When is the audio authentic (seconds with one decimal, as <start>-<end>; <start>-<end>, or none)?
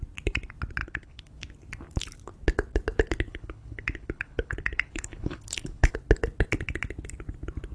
0.0-0.8; 1.3-3.3; 6.0-7.7